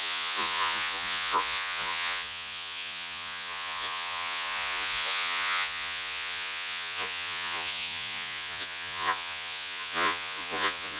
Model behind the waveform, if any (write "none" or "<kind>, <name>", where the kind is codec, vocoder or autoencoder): vocoder, Vocos